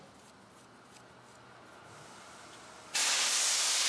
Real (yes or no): yes